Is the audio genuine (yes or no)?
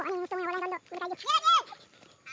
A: yes